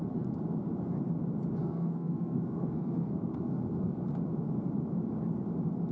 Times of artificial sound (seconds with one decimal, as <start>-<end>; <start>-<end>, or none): 1.6-4.0